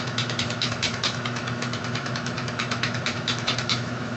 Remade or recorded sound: remade